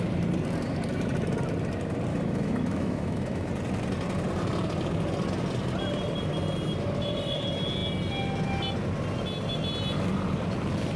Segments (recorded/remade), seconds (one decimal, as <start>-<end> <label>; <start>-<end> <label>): 0.0-2.1 recorded; 2.1-3.5 remade; 3.5-11.0 recorded